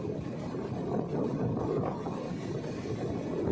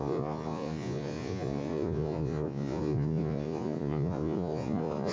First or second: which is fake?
second